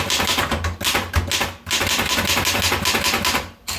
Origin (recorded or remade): recorded